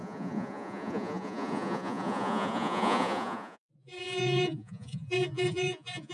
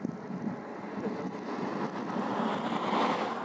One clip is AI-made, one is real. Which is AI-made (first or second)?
first